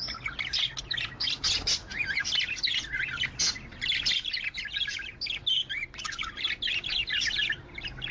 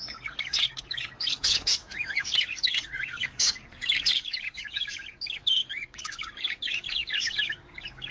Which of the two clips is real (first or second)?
first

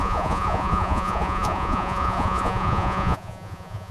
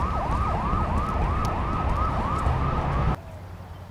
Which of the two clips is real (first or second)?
second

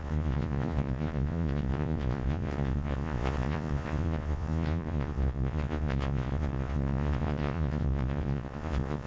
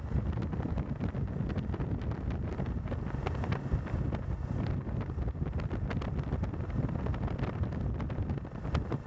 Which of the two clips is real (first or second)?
second